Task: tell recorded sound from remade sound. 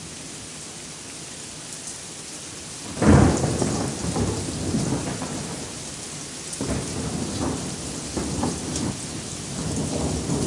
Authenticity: recorded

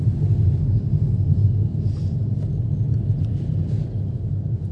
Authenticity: recorded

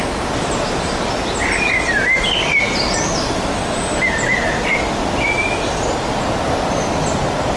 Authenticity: recorded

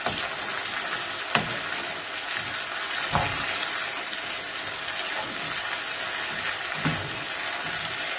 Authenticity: recorded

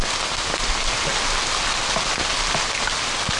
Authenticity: recorded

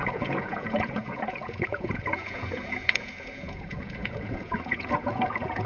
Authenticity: remade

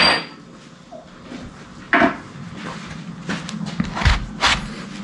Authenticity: recorded